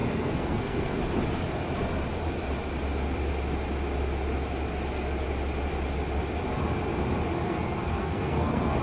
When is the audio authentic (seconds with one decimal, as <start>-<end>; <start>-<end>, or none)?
1.0-7.4